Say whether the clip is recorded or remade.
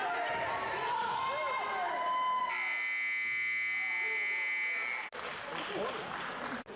recorded